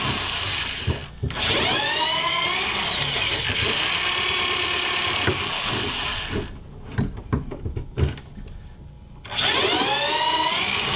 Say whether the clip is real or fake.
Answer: real